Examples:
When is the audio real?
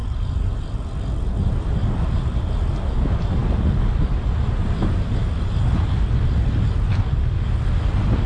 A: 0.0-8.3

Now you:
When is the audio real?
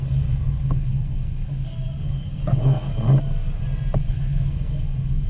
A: 2.9-4.1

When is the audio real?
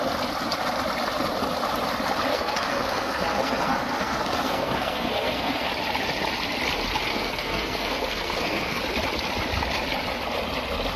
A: 0.0-2.3; 5.7-7.1; 8.8-11.0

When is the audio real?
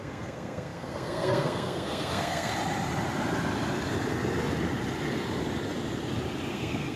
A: 2.5-6.5